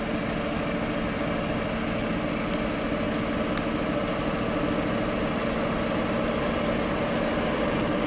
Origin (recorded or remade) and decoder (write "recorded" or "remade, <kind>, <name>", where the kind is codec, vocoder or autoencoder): recorded